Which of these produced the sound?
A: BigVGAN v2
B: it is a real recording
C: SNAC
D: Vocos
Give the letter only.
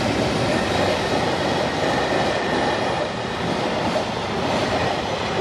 B